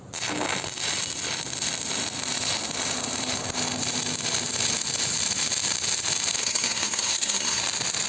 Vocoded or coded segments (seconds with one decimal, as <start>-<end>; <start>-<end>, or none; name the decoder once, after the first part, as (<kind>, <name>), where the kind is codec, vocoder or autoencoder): 6.4-7.6 (codec, SNAC)